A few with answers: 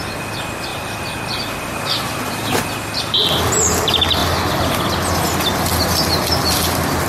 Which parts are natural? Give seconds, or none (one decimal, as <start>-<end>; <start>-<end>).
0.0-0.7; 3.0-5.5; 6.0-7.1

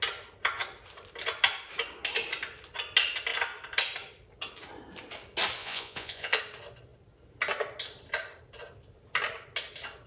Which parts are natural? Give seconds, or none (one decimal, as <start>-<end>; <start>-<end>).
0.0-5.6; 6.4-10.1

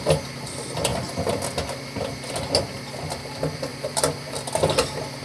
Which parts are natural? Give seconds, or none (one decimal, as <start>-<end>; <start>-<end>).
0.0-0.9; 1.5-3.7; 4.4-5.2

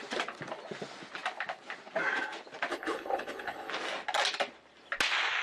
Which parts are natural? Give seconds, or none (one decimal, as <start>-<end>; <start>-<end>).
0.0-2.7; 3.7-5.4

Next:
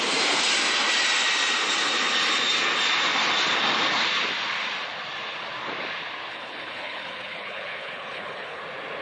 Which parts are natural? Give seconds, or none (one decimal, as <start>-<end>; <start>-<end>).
0.0-6.3; 8.6-9.0

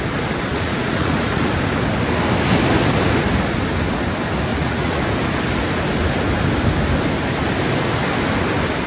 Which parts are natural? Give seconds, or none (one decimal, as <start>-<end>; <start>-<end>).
0.0-0.5; 1.5-4.5; 5.0-8.9